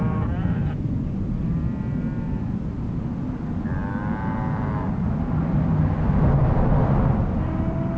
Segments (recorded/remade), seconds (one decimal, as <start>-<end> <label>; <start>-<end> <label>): 0.0-8.0 recorded